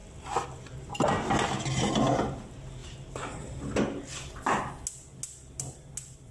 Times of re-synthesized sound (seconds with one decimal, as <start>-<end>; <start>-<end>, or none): 2.8-4.6